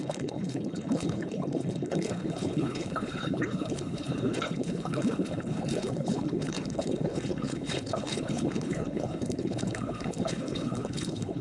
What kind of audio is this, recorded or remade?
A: remade